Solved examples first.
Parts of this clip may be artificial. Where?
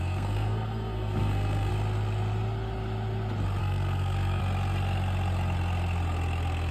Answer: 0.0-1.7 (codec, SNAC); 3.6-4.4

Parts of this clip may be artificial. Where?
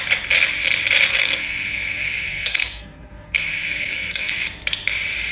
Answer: 1.1-4.3 (codec, SNAC)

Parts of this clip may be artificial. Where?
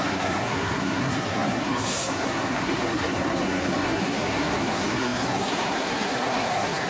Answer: 0.0-6.9 (codec, SNAC)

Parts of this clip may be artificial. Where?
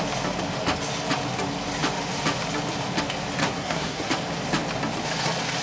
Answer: 3.4-4.1 (codec, SNAC)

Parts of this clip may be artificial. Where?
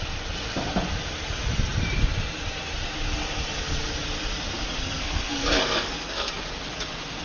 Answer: 4.8-6.3 (codec, SNAC)